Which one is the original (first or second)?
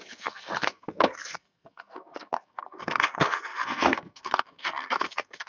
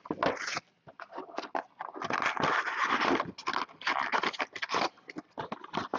second